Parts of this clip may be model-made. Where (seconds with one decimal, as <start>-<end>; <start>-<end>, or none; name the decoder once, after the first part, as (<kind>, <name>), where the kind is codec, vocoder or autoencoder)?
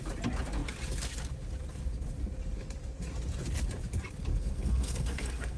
4.3-5.6 (codec, SNAC)